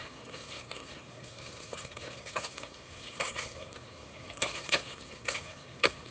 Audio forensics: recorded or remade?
remade